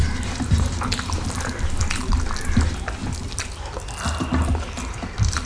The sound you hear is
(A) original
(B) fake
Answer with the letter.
A